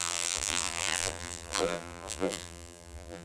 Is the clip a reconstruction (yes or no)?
yes